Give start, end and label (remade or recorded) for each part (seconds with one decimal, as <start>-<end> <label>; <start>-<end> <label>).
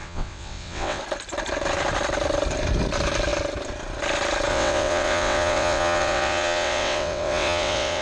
0.0-1.0 remade; 1.0-4.5 recorded; 4.5-8.0 remade